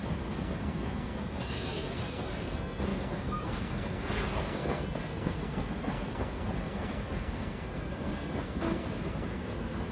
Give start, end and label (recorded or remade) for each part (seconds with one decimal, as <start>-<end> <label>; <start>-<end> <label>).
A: 0.0-9.9 remade